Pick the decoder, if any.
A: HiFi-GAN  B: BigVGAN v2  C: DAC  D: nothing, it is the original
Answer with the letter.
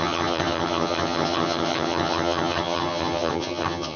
A